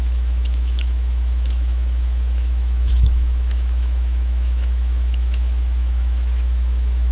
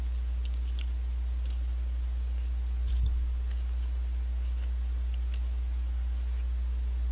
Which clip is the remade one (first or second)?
first